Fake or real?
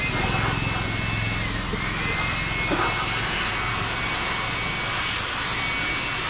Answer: real